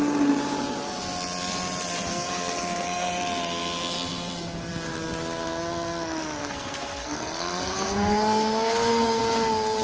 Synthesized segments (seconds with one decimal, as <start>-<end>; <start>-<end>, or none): 2.1-3.1; 6.4-9.2